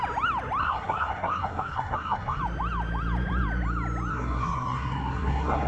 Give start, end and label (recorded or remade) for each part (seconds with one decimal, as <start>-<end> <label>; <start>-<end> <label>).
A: 0.0-0.6 recorded; 0.6-2.4 remade; 2.4-4.1 recorded; 4.1-5.7 remade